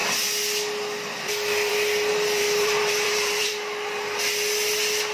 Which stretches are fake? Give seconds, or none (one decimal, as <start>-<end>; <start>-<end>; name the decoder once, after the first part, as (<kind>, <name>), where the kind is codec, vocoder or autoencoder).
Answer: 2.1-3.5 (vocoder, BigVGAN v2)